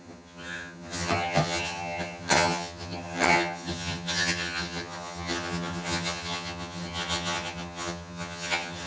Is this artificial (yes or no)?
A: yes